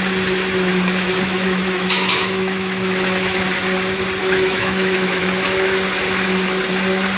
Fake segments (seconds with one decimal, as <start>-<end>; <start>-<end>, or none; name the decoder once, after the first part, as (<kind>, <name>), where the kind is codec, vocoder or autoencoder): 0.7-3.4 (autoencoder, DAC-VAE); 4.2-5.2